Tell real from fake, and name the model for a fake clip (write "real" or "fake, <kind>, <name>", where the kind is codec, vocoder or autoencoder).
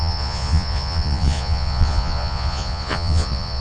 fake, vocoder, Vocos